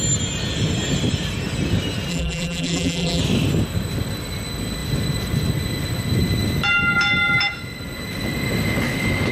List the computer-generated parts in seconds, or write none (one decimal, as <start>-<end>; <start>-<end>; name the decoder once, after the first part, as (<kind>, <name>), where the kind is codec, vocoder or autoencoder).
2.1-3.2 (vocoder, BigVGAN v2)